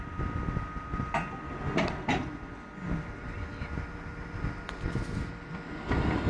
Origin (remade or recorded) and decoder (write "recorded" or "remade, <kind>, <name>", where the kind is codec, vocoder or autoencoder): recorded